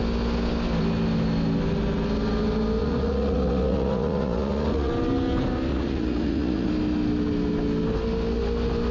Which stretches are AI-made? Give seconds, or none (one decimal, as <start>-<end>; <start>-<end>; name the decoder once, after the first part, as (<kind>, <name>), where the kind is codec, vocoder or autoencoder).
2.8-4.9 (vocoder, Vocos); 5.7-6.7